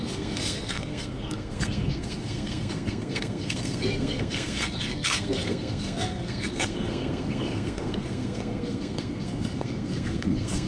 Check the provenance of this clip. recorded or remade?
remade